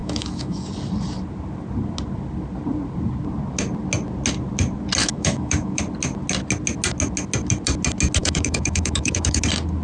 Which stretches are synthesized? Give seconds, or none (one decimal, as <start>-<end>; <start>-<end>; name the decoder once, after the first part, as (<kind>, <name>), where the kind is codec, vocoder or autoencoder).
0.0-0.7 (autoencoder, DAC-VAE); 5.0-5.8; 8.2-9.4